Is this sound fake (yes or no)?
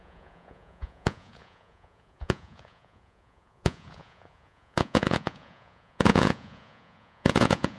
yes